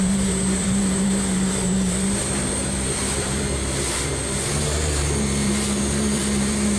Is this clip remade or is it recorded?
remade